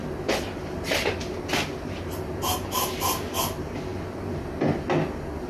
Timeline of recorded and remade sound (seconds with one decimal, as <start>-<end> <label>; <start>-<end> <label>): 0.0-5.5 recorded